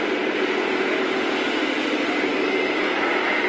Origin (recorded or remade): recorded